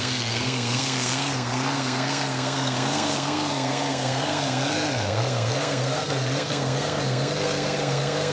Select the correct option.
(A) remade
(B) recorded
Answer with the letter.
A